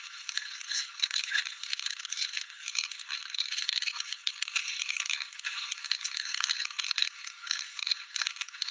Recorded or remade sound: remade